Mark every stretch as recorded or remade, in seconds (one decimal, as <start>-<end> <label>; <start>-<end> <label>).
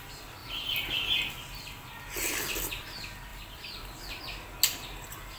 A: 0.0-0.4 recorded; 0.4-1.3 remade; 1.3-3.3 recorded; 3.3-4.2 remade; 4.2-5.4 recorded